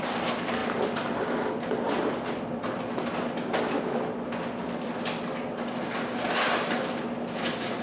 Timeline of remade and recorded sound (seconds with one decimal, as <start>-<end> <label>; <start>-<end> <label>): 0.0-7.8 recorded